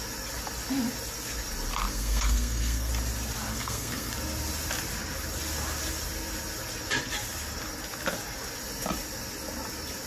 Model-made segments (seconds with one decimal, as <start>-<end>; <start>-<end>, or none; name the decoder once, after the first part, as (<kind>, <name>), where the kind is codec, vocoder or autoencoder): 1.9-2.9 (codec, SNAC); 3.5-4.1